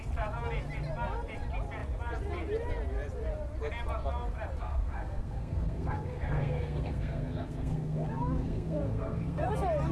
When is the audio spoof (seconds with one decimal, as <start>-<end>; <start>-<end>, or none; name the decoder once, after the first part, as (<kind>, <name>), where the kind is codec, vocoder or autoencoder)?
4.6-9.5 (codec, SNAC)